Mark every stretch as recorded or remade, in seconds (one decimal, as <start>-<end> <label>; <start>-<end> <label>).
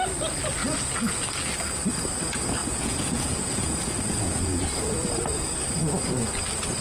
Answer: 0.0-2.6 recorded; 2.6-4.6 remade; 4.6-6.8 recorded